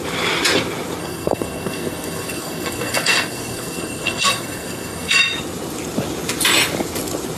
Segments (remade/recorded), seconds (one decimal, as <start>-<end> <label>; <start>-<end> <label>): 0.0-1.0 recorded; 1.0-5.2 remade; 5.2-7.4 recorded